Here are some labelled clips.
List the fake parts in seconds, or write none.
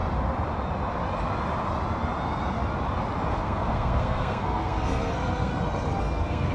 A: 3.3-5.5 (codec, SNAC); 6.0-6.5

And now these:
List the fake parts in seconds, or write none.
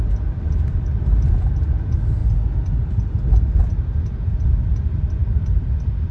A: none